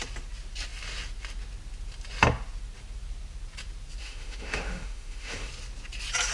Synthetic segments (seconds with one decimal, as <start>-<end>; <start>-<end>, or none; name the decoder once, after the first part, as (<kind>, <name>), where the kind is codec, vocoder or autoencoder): 4.0-5.5 (autoencoder, DAC-VAE)